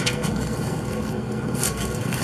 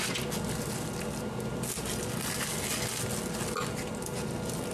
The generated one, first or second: first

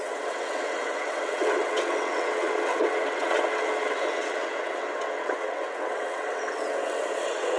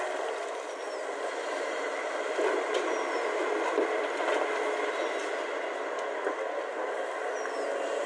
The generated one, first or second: first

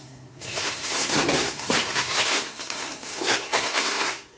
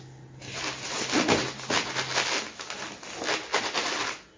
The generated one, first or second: first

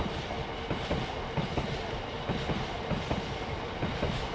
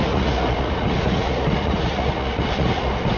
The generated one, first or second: second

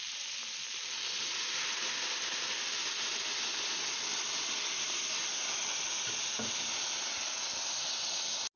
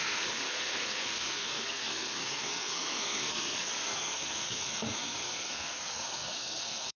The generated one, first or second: second